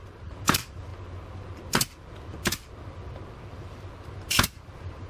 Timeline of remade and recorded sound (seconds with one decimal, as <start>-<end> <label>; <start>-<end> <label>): 0.0-0.9 remade; 0.9-4.0 recorded; 4.0-5.1 remade